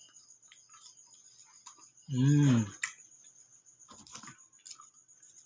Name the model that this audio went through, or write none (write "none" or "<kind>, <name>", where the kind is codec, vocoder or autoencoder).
none